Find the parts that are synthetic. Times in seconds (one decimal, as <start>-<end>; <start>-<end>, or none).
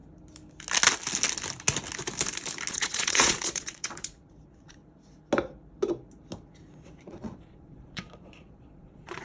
2.7-4.8; 6.6-9.2